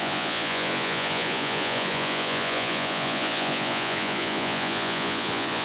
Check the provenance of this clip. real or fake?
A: fake